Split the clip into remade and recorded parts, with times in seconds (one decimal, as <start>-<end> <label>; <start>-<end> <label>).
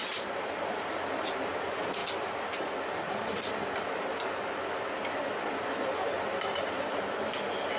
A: 0.0-1.1 remade; 1.1-2.0 recorded; 2.0-3.2 remade; 3.2-6.9 recorded; 6.9-7.8 remade